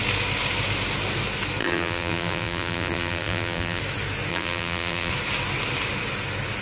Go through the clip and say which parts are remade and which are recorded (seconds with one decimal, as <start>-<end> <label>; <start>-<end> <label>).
0.0-1.6 recorded; 1.6-3.8 remade; 3.8-4.3 recorded; 4.3-5.1 remade; 5.1-6.6 recorded